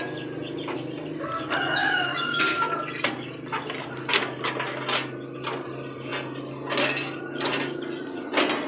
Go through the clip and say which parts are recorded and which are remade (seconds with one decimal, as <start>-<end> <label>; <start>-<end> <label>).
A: 0.0-1.8 recorded; 1.8-2.4 remade; 2.4-8.7 recorded